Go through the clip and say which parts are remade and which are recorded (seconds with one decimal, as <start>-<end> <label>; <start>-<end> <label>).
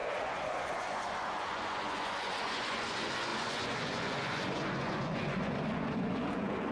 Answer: 0.0-6.7 remade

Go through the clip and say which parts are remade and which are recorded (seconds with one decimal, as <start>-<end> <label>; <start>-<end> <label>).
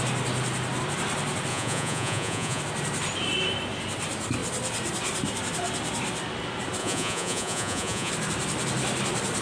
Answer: 0.0-1.5 recorded; 1.5-2.6 remade; 2.6-6.8 recorded; 6.8-8.1 remade; 8.1-9.4 recorded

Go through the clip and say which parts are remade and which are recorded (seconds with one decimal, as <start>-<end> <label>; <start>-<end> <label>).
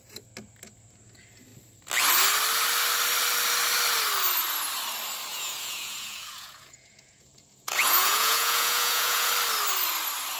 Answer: 0.0-5.3 recorded; 5.3-9.3 remade; 9.3-10.4 recorded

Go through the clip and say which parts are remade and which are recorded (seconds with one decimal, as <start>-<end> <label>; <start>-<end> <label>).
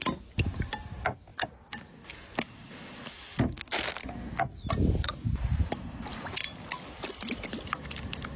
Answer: 0.0-8.4 recorded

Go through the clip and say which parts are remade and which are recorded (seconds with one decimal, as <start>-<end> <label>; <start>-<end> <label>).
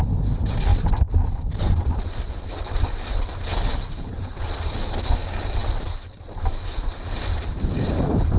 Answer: 0.0-8.4 recorded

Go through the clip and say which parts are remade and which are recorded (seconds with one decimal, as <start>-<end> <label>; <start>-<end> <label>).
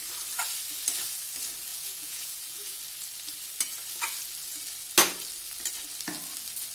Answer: 0.0-1.7 recorded; 1.7-2.8 remade; 2.8-6.7 recorded